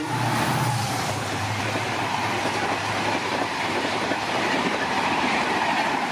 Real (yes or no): no